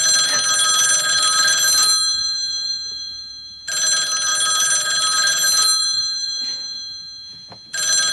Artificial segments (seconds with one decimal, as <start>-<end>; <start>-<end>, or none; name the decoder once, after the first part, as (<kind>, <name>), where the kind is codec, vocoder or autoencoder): 1.1-4.3 (vocoder, BigVGAN v2); 5.0-8.1